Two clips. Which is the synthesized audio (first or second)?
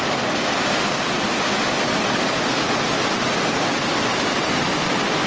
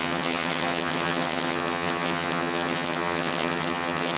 second